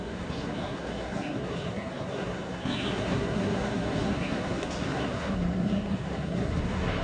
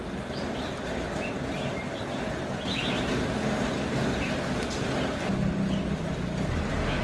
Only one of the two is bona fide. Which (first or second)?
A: second